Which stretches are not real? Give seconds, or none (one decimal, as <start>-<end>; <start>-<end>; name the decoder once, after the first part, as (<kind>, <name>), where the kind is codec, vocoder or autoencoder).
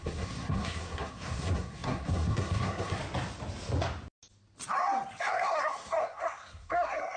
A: 0.0-3.0 (codec, SNAC); 5.2-7.2